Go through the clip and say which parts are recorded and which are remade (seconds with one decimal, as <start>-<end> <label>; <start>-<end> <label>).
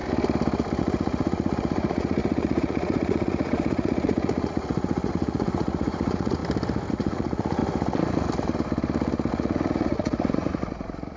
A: 0.0-0.8 recorded; 0.8-6.4 remade; 6.4-6.9 recorded; 6.9-7.6 remade; 7.6-9.3 recorded; 9.3-11.2 remade